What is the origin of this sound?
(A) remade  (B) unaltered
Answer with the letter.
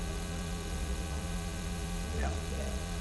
A